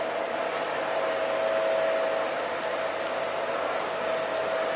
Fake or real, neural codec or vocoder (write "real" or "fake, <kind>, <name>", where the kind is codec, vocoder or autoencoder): real